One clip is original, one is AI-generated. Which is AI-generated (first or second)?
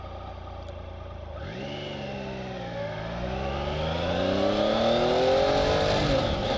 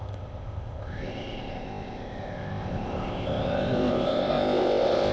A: second